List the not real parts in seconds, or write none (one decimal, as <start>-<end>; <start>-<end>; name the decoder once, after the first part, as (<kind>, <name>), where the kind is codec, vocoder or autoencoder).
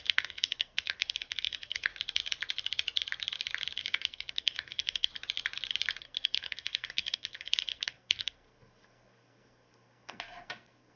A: 0.0-1.9 (codec, SNAC); 3.8-5.1; 6.0-11.0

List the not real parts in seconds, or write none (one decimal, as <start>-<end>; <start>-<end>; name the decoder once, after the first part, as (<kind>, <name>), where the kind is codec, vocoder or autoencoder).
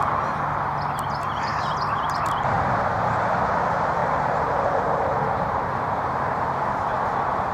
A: 1.5-2.2 (vocoder, BigVGAN v2); 4.0-5.7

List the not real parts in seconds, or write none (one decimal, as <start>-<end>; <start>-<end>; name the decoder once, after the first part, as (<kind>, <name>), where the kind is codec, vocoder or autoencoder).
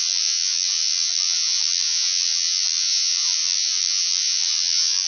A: 0.0-5.1 (vocoder, BigVGAN v2)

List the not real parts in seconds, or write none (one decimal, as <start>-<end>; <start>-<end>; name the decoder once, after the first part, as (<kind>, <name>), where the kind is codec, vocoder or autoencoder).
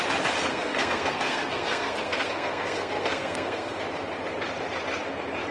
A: 0.5-3.8 (codec, SNAC)